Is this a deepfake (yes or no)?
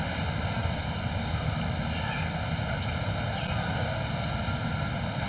no